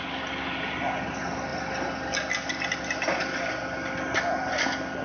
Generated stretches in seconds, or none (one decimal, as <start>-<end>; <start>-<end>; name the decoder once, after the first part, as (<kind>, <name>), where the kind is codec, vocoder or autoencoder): none